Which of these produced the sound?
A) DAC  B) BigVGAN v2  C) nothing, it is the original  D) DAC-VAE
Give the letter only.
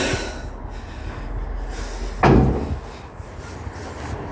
C